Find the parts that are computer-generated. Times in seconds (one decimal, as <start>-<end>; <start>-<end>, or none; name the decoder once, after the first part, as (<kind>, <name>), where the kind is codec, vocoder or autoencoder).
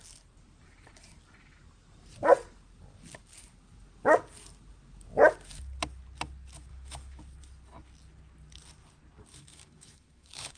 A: 6.7-7.2 (autoencoder, DAC-VAE); 9.3-10.6